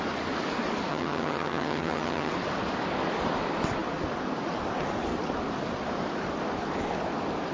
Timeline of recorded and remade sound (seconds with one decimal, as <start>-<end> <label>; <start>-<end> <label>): 0.0-0.9 recorded; 0.9-2.3 remade; 2.3-7.5 recorded